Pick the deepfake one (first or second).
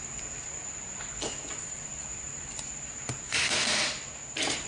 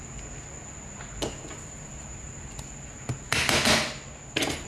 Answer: first